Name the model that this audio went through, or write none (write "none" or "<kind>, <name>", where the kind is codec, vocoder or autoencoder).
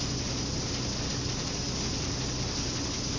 none